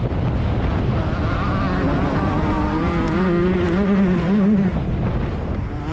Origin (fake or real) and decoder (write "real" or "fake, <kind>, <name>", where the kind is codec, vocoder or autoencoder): real